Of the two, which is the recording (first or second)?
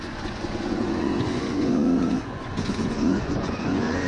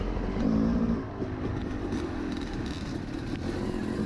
second